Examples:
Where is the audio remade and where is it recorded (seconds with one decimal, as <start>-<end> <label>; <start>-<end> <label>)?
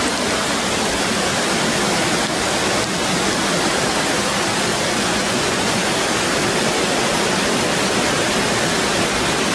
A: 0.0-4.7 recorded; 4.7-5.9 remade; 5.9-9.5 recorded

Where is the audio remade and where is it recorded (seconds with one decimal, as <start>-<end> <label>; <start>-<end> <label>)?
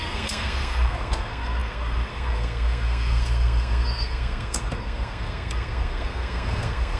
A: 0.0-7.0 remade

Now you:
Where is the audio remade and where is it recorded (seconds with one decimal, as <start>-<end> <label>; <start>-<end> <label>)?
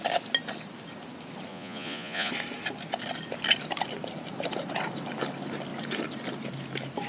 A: 0.0-1.5 recorded; 1.5-2.3 remade; 2.3-7.1 recorded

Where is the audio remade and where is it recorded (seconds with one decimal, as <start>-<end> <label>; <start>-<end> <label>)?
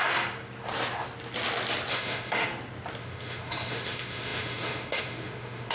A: 0.0-1.9 recorded; 1.9-2.5 remade; 2.5-3.0 recorded; 3.0-5.7 remade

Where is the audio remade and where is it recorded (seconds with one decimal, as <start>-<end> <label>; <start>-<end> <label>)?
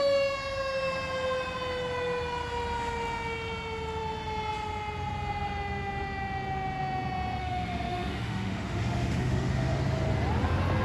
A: 0.0-7.4 recorded; 7.4-9.8 remade; 9.8-10.8 recorded